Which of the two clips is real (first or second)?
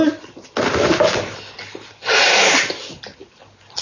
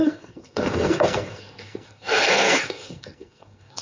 first